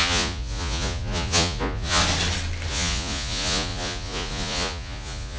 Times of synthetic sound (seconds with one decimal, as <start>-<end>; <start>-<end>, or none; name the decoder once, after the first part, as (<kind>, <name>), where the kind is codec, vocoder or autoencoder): 0.0-2.0 (vocoder, Vocos); 2.7-5.4